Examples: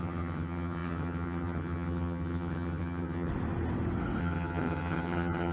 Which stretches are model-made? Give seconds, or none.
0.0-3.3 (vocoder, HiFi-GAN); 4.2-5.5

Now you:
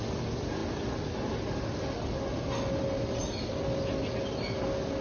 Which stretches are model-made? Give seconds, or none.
none

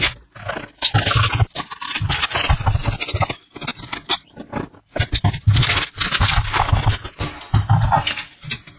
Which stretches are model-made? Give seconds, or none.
none

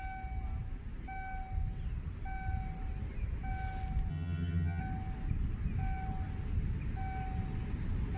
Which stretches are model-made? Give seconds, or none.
4.1-4.8 (vocoder, HiFi-GAN)

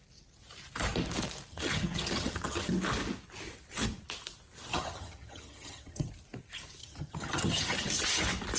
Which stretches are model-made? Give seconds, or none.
1.5-2.7 (vocoder, HiFi-GAN); 4.7-6.1; 6.8-8.2

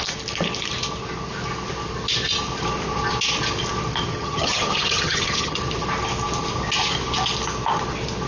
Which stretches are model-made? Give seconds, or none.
4.1-5.6 (vocoder, HiFi-GAN)

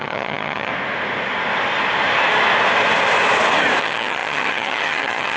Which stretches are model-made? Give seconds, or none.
0.0-0.7 (vocoder, HiFi-GAN); 3.8-5.4

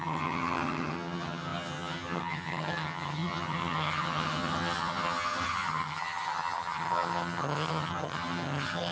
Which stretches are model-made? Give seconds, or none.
0.0-8.9 (vocoder, HiFi-GAN)